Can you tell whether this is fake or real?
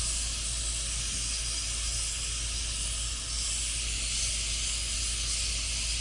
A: real